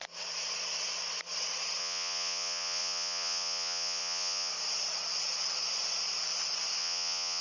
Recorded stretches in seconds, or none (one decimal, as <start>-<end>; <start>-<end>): 0.0-1.8; 4.5-6.8